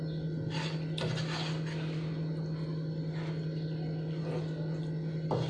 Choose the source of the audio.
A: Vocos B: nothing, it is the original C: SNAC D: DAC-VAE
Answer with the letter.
B